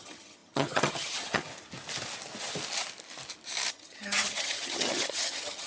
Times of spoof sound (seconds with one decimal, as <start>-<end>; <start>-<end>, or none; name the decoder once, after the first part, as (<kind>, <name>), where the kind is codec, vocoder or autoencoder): 0.0-1.5 (vocoder, HiFi-GAN); 3.7-5.7

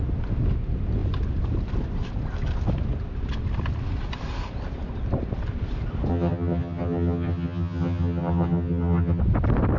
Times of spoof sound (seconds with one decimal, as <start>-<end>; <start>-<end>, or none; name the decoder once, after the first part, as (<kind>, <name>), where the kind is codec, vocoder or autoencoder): 6.1-9.2 (vocoder, HiFi-GAN)

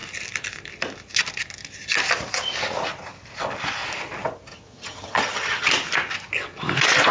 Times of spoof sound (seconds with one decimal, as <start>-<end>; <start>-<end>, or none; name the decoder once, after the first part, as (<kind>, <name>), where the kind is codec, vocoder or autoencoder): 4.5-5.7 (vocoder, HiFi-GAN)

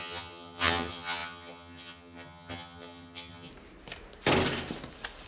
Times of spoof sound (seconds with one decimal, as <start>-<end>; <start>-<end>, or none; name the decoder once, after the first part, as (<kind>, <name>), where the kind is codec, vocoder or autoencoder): 0.0-3.5 (vocoder, HiFi-GAN)

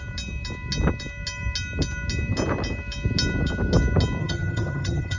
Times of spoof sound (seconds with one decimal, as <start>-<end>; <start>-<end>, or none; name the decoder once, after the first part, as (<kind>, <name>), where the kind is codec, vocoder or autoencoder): 4.2-5.2 (vocoder, HiFi-GAN)

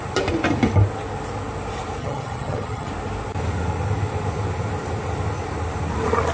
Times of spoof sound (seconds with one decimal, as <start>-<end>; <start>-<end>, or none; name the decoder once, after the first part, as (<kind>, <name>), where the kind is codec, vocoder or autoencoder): 2.0-2.9 (vocoder, HiFi-GAN)

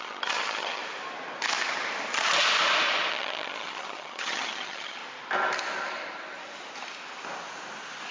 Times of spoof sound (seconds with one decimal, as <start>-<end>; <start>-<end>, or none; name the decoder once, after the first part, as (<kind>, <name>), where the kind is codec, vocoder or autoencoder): 0.0-0.8 (vocoder, HiFi-GAN); 3.1-5.0

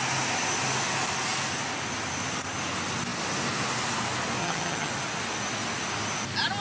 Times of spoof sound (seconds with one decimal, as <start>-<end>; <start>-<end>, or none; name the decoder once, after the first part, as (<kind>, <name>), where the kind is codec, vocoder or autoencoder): 4.4-4.9 (vocoder, HiFi-GAN)